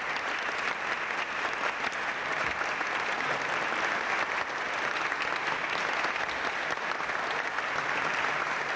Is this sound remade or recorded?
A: recorded